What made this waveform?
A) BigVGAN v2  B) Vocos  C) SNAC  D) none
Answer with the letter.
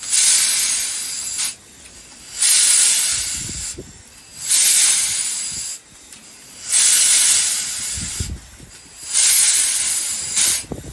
D